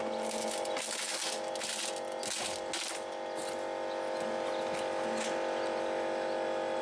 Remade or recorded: recorded